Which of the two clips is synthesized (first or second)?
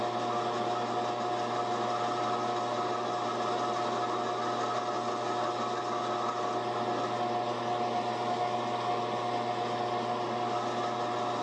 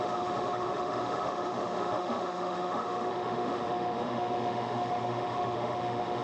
second